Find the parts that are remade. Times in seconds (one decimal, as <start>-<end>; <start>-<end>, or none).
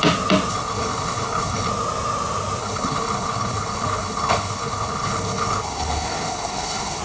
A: 0.5-1.7; 2.6-7.0